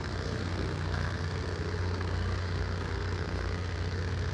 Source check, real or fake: fake